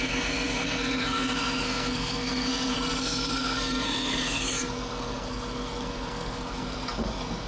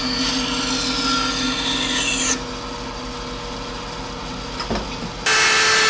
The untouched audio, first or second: second